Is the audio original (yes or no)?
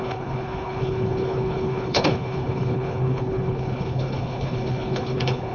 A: no